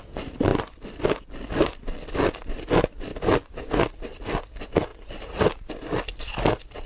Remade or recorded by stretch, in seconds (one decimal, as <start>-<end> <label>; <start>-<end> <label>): 0.0-3.1 recorded; 3.1-3.7 remade; 3.7-4.9 recorded; 4.9-5.7 remade; 5.7-6.9 recorded